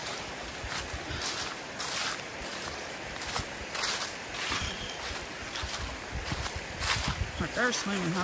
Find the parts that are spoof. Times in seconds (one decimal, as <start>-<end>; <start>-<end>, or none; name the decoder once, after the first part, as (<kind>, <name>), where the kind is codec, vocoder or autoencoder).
2.5-6.8 (vocoder, BigVGAN v2)